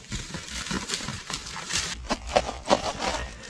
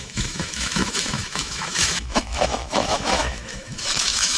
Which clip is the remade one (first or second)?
second